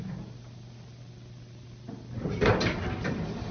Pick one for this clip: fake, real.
real